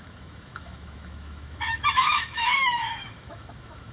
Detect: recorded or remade remade